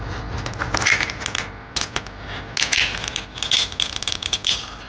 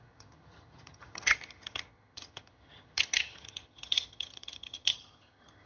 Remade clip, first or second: second